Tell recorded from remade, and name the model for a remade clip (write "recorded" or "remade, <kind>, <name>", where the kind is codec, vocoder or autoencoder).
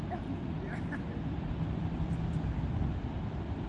recorded